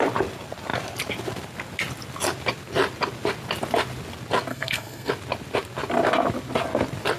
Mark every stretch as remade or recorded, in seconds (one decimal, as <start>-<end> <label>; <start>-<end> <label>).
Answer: 0.0-4.5 recorded; 4.5-5.1 remade; 5.1-7.2 recorded